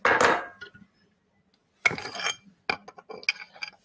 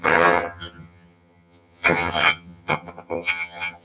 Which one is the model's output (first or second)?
second